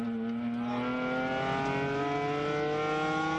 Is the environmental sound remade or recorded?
recorded